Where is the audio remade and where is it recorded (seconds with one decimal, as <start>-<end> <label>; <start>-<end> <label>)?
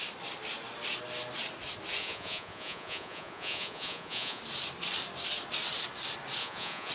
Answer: 0.0-2.0 recorded; 2.0-4.4 remade; 4.4-6.4 recorded; 6.4-6.9 remade